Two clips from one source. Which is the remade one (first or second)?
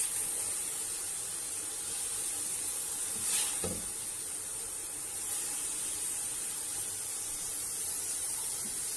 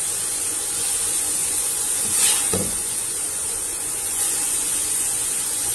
second